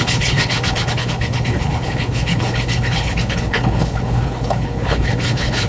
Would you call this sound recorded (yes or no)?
no